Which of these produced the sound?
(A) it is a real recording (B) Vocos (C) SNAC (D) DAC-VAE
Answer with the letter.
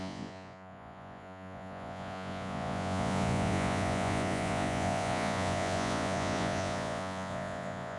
B